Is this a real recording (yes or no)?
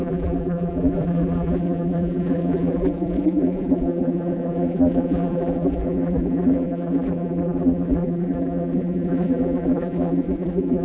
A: no